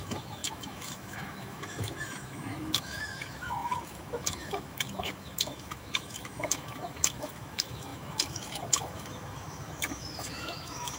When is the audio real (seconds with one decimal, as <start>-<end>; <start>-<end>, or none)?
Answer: none